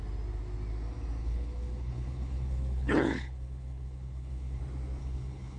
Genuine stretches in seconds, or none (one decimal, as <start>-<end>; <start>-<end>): 0.0-1.2; 4.6-5.0